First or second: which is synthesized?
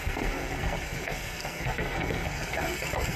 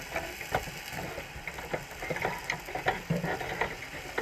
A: first